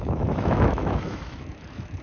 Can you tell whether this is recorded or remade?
remade